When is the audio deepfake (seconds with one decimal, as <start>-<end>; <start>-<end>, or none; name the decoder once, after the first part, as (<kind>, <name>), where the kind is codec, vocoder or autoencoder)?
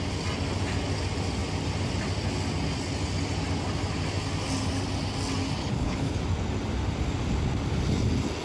5.6-6.2 (codec, HILCodec)